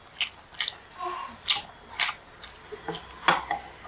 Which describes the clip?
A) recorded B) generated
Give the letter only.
A